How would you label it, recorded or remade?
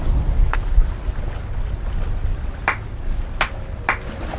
recorded